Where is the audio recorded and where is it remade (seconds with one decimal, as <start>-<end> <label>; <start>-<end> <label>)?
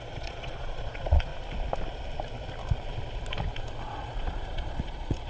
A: 0.0-1.3 remade; 1.3-3.8 recorded; 3.8-5.3 remade